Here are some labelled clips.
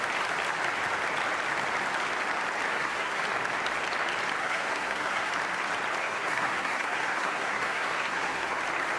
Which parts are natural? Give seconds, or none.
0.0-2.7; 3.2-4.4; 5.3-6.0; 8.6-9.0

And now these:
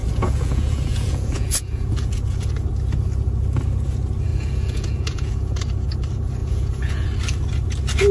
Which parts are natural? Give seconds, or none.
2.5-4.3; 5.5-6.4; 7.1-8.1

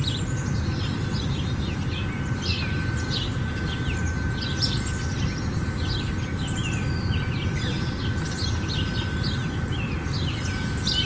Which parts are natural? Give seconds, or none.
0.0-11.1

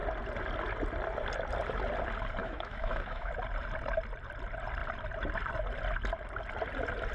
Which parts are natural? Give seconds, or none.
0.0-2.4; 3.3-7.1

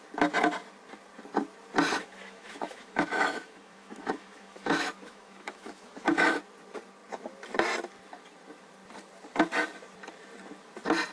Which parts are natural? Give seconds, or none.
0.0-1.9; 6.4-11.1

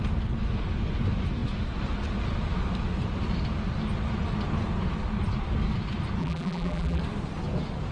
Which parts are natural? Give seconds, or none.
0.0-6.2; 7.0-7.9